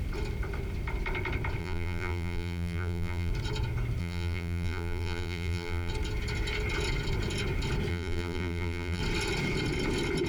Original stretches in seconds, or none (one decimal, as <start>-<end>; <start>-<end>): 0.0-1.6; 3.3-4.0; 5.9-7.9; 9.0-10.3